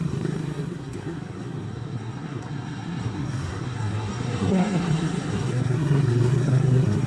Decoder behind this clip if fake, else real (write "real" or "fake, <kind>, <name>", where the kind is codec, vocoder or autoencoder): fake, codec, SNAC